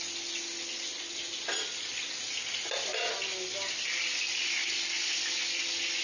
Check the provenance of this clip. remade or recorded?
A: recorded